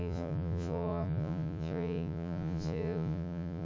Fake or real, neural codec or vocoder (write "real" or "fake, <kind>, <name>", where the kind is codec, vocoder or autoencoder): fake, vocoder, Vocos